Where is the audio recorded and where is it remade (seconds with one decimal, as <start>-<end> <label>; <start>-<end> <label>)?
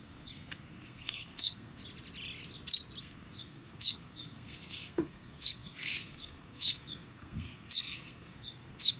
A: 0.0-1.8 remade; 1.8-3.0 recorded; 3.0-9.0 remade